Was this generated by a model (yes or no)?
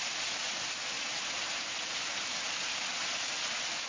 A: no